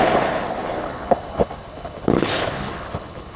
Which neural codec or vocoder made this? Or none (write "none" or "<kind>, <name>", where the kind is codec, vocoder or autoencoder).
codec, HILCodec